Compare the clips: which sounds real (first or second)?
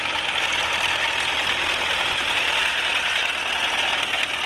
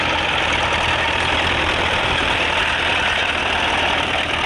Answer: first